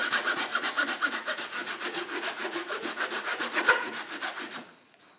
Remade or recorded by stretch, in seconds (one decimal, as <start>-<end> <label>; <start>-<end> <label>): 0.0-5.2 remade

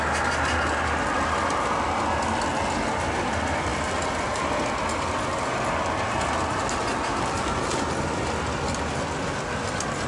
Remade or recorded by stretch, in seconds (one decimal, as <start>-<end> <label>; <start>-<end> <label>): 0.0-10.1 recorded

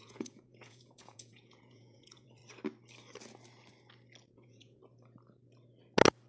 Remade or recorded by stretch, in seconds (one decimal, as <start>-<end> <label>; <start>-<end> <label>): 0.0-2.4 remade; 2.4-4.3 recorded; 4.3-4.8 remade; 4.8-6.3 recorded

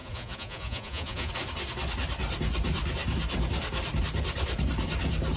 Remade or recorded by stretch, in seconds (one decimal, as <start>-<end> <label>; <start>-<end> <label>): 0.0-1.3 remade; 1.3-5.4 recorded

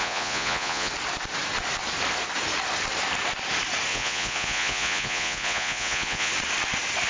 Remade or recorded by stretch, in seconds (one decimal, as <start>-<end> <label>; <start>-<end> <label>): 0.0-0.9 remade; 0.9-3.9 recorded; 3.9-6.3 remade; 6.3-7.1 recorded

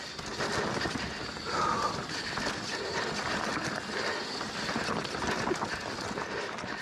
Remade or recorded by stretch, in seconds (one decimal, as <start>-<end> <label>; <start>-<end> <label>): 0.0-6.8 recorded